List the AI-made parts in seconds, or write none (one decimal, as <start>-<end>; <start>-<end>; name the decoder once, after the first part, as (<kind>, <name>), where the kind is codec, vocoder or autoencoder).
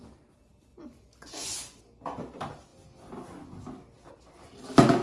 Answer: 0.7-1.8 (vocoder, Vocos)